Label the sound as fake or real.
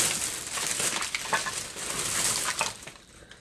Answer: real